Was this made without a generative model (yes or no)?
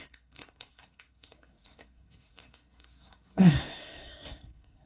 no